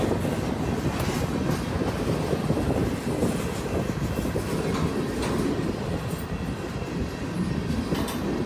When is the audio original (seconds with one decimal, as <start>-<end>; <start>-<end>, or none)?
0.0-8.5